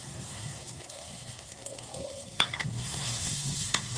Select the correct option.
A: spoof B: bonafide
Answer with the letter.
A